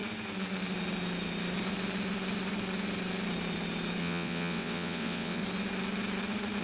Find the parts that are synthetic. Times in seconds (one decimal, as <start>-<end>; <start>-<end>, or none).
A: 4.0-5.4